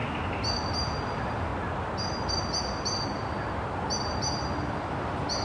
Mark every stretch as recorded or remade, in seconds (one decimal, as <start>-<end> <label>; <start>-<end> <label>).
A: 0.0-0.7 recorded; 0.7-1.5 remade; 1.5-4.7 recorded; 4.7-5.4 remade